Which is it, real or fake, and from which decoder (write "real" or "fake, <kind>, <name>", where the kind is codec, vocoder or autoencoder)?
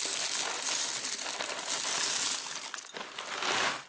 real